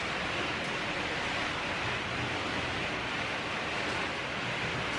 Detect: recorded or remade recorded